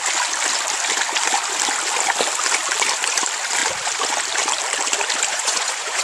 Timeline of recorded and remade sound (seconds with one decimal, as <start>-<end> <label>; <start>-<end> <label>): 0.0-5.3 recorded; 5.3-6.0 remade